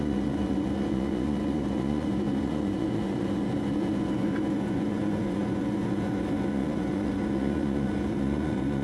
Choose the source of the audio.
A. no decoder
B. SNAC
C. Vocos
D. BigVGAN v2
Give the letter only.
C